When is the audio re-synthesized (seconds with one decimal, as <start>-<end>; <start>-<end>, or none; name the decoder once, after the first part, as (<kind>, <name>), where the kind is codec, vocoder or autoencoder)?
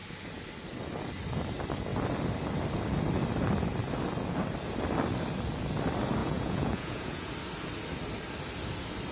6.2-7.3 (vocoder, Vocos)